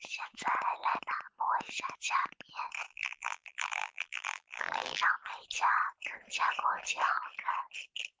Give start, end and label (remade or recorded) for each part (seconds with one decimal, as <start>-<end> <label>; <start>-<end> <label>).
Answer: 0.0-2.9 recorded; 2.9-5.0 remade; 5.0-8.2 recorded